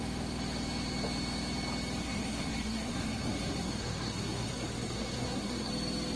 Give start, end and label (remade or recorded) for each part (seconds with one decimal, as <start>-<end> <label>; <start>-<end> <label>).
0.0-2.0 recorded; 2.0-5.7 remade; 5.7-6.2 recorded